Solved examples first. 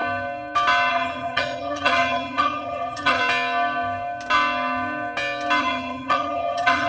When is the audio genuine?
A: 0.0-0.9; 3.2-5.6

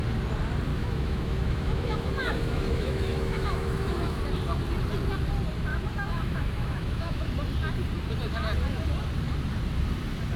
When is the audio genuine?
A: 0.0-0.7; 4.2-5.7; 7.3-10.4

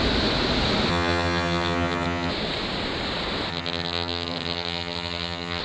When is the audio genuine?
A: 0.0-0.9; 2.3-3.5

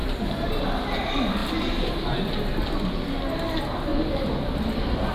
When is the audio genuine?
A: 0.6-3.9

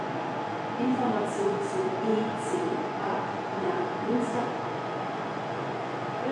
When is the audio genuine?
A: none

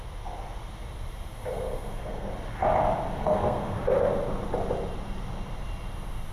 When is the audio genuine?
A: 0.0-1.5; 2.3-3.2; 3.8-6.3